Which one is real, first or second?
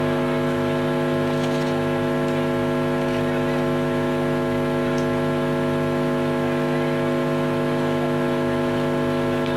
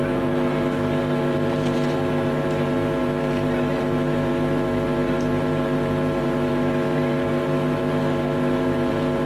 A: first